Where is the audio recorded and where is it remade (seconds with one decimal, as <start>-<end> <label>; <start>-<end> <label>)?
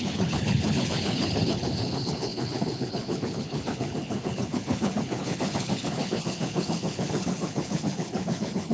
0.0-8.7 remade